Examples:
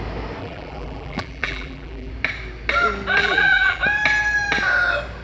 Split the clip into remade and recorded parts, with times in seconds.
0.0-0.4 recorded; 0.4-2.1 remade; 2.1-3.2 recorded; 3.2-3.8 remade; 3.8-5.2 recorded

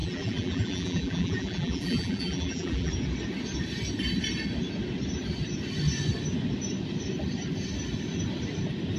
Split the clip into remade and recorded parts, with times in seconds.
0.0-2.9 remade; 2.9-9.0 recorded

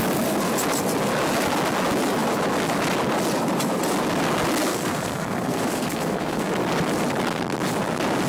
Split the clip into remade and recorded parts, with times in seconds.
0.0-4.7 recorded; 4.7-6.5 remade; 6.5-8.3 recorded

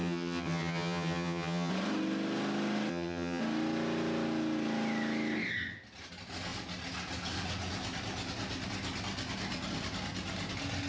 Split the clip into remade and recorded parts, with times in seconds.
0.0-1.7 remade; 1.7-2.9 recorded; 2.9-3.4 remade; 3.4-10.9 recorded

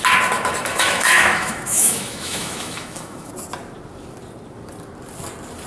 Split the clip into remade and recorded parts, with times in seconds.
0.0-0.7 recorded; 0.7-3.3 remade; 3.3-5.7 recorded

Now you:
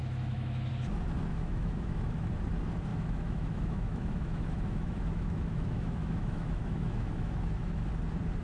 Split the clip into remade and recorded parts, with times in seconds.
0.0-0.7 remade; 0.7-1.3 recorded; 1.3-2.3 remade; 2.3-2.9 recorded; 2.9-7.9 remade; 7.9-8.4 recorded

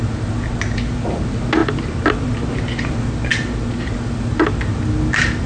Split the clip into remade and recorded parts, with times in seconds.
0.0-5.5 recorded